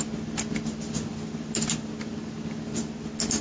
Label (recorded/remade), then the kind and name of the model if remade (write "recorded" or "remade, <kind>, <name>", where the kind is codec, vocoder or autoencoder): recorded